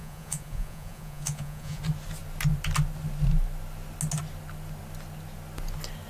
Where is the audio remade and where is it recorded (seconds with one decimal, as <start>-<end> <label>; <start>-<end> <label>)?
0.0-1.8 remade; 1.8-6.1 recorded